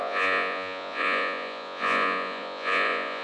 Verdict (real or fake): fake